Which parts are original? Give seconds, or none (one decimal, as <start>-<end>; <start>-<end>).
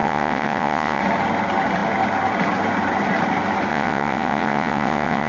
1.0-3.7